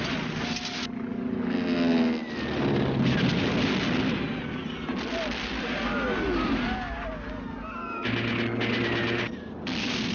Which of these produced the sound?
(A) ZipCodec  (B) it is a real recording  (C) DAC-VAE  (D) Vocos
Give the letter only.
B